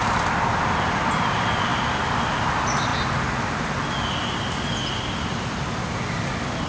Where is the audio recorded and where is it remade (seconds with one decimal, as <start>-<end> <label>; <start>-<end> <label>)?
0.0-6.7 recorded